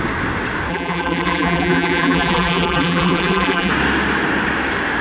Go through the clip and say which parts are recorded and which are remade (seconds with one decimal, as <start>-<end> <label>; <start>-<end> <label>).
0.0-0.7 recorded; 0.7-3.7 remade; 3.7-5.0 recorded

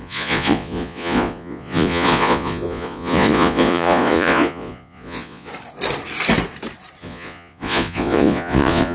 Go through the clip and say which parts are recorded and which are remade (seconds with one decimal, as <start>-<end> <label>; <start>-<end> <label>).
0.0-5.5 remade; 5.5-7.0 recorded; 7.0-8.9 remade

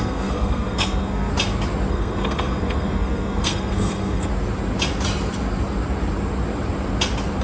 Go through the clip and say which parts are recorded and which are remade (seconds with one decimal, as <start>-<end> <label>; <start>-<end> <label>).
0.0-1.3 remade; 1.3-1.9 recorded; 1.9-4.3 remade; 4.3-7.4 recorded

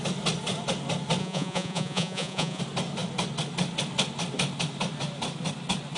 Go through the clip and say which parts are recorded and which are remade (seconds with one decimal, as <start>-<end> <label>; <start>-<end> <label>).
0.0-1.2 recorded; 1.2-2.6 remade; 2.6-6.0 recorded